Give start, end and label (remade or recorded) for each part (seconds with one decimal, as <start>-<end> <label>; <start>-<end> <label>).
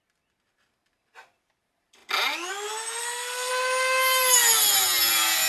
0.0-3.0 recorded; 3.0-3.5 remade; 3.5-5.5 recorded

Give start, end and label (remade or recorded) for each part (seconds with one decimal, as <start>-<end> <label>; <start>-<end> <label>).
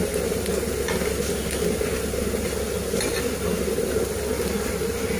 0.0-5.2 recorded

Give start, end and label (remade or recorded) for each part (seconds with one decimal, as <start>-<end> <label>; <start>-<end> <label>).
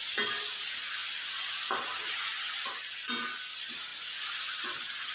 0.0-5.1 recorded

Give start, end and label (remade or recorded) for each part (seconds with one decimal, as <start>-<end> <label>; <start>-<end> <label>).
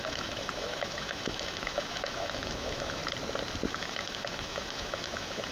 0.0-3.0 remade; 3.0-3.7 recorded; 3.7-5.5 remade